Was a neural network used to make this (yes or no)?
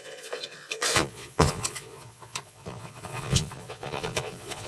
yes